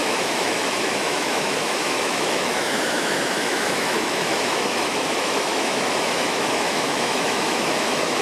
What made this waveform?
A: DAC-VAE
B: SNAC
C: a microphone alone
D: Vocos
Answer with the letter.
A